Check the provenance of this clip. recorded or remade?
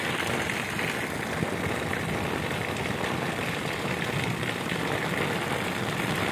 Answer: recorded